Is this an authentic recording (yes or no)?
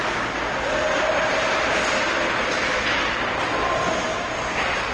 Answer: yes